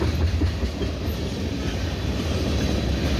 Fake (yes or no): no